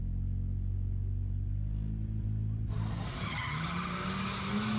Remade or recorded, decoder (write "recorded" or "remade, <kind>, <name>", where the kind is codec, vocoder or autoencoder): recorded